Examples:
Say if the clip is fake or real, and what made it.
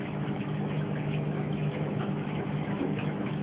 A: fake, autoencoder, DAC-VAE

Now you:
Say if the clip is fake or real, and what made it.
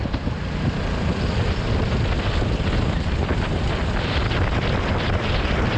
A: real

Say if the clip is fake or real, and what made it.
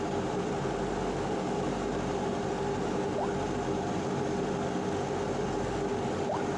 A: real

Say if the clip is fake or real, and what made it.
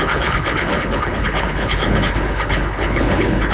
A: fake, codec, HILCodec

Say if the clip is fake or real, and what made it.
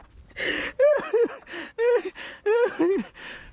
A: fake, vocoder, BigVGAN v2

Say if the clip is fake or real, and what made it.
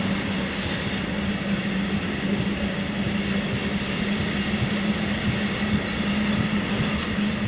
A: real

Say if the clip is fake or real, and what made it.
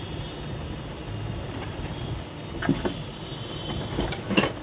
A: real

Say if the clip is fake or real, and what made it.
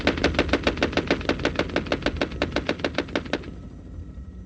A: real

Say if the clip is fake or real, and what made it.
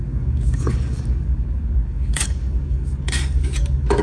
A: fake, codec, DAC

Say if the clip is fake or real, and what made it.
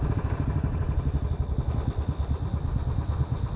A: real